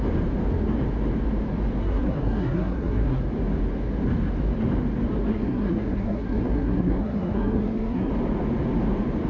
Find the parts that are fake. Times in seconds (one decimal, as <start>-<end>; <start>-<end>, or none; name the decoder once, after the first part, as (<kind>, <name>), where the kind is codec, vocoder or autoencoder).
1.8-3.2 (codec, SNAC); 5.3-8.1